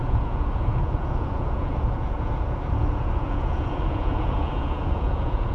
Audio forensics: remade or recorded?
remade